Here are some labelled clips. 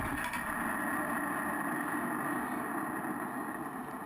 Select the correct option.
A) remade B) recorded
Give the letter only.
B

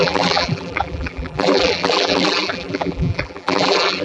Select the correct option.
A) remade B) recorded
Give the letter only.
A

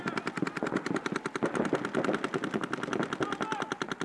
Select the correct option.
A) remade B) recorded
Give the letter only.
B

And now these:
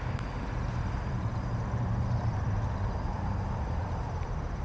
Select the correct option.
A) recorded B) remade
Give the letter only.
B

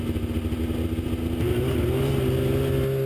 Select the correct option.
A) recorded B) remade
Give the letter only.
A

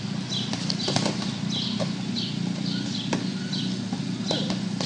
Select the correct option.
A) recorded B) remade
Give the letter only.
A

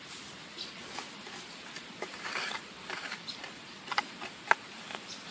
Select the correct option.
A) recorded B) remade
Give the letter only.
B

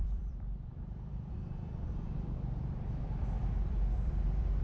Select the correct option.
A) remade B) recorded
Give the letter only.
A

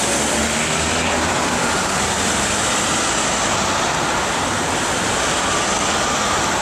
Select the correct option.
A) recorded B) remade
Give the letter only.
A